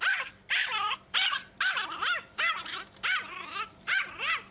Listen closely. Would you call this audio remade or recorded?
remade